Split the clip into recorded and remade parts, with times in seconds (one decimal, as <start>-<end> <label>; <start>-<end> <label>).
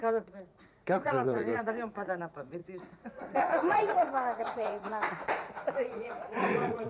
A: 0.0-6.9 remade